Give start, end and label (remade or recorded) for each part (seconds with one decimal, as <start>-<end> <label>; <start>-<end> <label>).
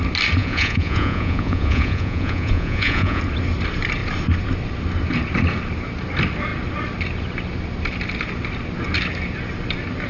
0.0-0.4 recorded; 0.4-3.2 remade; 3.2-10.1 recorded